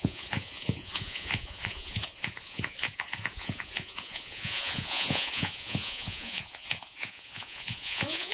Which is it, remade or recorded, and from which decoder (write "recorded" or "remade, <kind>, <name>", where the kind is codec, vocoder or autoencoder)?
remade, vocoder, Vocos